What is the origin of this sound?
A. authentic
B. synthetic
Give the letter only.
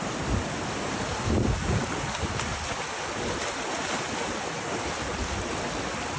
A